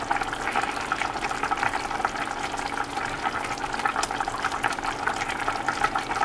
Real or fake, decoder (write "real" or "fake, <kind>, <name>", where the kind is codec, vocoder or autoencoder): real